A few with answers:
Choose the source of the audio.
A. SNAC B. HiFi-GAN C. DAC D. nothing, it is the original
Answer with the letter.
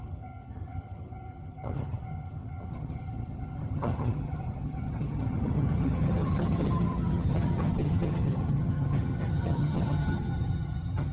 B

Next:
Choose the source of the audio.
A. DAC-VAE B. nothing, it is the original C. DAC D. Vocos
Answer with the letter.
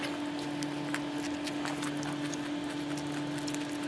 B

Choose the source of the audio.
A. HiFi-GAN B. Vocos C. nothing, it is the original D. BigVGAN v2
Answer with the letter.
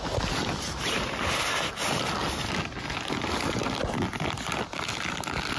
C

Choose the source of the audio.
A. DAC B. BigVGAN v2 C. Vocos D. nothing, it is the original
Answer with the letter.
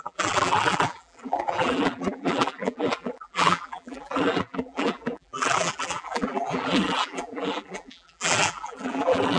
B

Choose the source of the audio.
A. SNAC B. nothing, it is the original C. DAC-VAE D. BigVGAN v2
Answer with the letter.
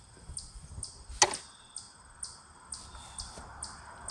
B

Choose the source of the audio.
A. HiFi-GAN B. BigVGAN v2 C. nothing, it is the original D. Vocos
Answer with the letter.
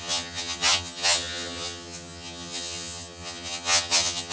A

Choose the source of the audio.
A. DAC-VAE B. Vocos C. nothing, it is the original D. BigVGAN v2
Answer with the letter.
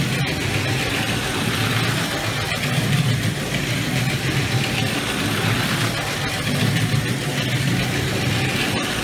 C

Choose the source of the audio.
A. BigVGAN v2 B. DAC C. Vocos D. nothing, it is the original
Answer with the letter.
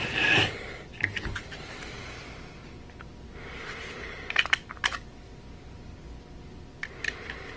D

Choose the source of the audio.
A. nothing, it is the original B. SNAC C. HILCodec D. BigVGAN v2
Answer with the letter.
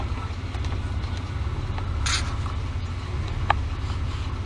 A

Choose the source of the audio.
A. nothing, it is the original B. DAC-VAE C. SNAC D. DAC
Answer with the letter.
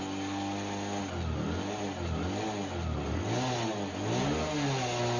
A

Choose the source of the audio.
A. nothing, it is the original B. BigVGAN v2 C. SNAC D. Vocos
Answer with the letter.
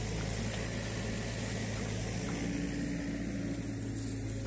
A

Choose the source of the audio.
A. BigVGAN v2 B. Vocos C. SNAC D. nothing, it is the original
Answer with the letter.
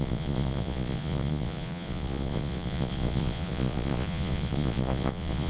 B